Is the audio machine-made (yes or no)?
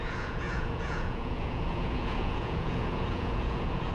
yes